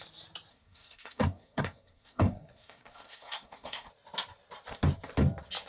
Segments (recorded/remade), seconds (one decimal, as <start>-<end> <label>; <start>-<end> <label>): 0.0-0.5 recorded; 0.5-3.9 remade; 3.9-5.7 recorded